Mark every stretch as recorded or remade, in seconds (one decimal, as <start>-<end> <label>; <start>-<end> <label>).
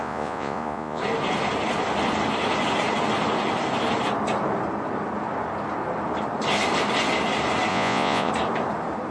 0.0-1.0 remade; 1.0-7.7 recorded; 7.7-8.3 remade; 8.3-9.1 recorded